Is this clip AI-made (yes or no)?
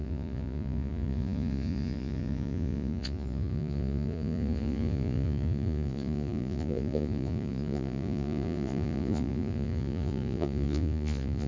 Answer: yes